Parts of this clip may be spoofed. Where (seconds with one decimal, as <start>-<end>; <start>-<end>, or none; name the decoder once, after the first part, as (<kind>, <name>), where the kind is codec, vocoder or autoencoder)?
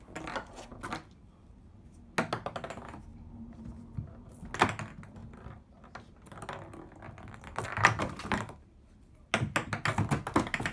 none